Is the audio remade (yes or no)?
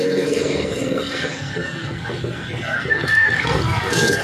yes